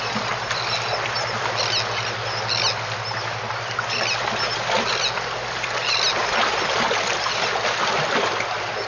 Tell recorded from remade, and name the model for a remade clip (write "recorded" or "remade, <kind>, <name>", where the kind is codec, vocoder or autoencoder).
recorded